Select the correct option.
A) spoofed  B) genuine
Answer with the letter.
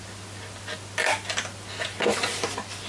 B